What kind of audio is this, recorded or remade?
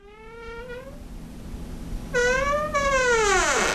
recorded